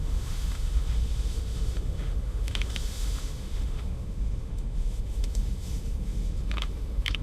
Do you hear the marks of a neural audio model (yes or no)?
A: yes